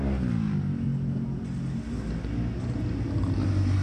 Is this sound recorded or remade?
recorded